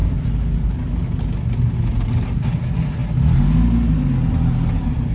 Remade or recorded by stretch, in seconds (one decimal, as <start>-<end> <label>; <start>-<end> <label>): 0.0-5.1 recorded